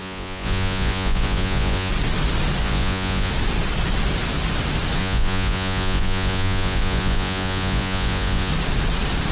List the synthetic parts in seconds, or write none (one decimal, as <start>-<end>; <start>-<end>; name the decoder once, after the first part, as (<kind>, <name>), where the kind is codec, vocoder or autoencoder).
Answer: 0.0-1.9 (vocoder, Vocos); 2.6-3.3; 5.0-8.5